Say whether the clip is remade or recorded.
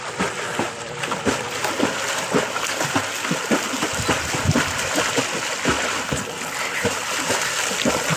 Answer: recorded